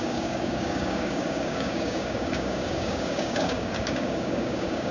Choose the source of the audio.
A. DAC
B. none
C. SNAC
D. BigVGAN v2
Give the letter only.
A